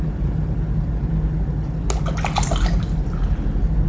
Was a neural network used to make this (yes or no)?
no